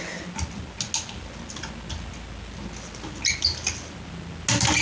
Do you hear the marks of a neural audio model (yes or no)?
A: no